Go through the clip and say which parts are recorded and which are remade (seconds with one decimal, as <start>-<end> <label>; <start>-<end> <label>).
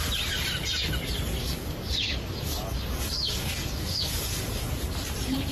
0.0-1.4 recorded; 1.4-4.7 remade; 4.7-5.5 recorded